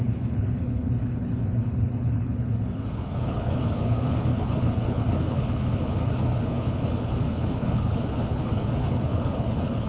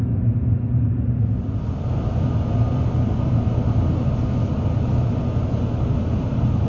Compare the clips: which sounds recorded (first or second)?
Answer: second